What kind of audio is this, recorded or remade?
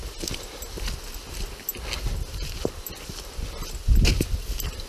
recorded